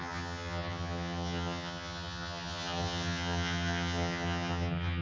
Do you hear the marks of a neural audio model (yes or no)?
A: yes